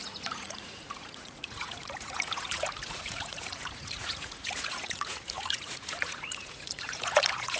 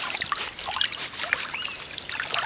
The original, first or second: second